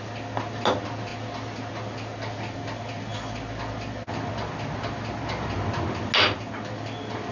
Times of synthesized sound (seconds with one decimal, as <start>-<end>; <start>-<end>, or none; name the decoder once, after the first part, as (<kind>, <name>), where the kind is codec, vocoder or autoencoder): none